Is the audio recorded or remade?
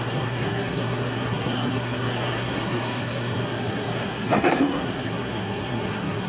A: remade